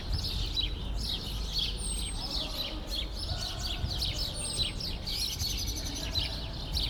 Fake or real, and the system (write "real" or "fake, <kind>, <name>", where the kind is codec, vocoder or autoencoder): real